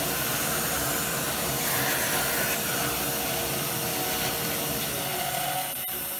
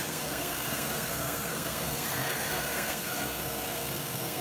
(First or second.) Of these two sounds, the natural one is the first